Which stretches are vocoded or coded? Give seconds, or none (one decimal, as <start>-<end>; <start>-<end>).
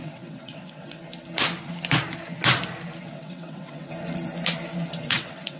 0.0-1.0; 3.1-3.9; 5.1-5.6